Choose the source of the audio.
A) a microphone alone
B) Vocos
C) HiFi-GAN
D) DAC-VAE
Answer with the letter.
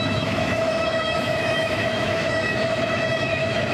D